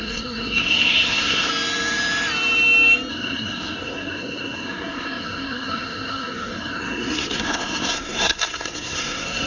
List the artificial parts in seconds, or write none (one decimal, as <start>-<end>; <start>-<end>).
0.0-1.5; 3.1-9.5